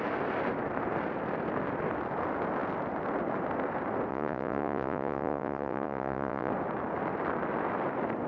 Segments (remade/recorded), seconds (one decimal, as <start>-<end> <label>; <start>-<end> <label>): 0.0-4.1 recorded; 4.1-6.5 remade; 6.5-8.3 recorded